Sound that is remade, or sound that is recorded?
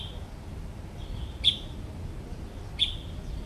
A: recorded